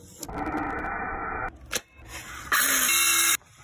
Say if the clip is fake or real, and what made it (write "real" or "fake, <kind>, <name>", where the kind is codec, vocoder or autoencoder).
real